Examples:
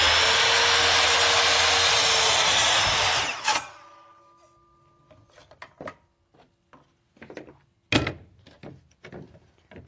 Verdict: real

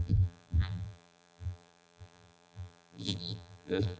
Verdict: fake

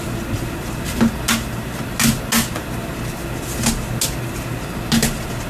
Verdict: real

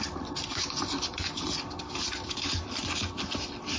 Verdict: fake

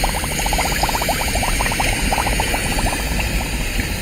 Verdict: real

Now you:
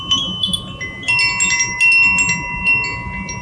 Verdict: real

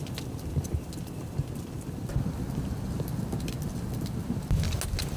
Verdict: real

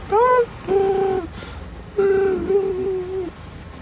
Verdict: real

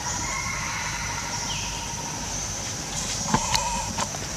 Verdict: fake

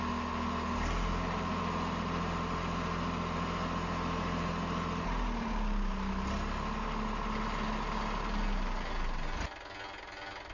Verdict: real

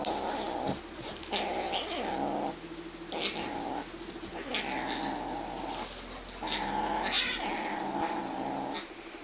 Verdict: real